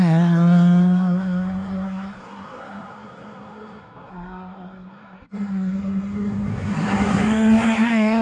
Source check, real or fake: fake